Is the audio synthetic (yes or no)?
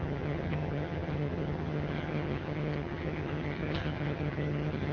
yes